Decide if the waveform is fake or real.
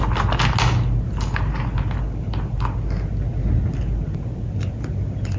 real